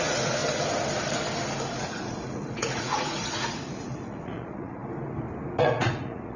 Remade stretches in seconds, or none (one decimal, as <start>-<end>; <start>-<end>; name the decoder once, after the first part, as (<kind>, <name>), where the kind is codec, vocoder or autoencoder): 0.0-0.4 (vocoder, Vocos); 1.7-4.8; 5.6-6.4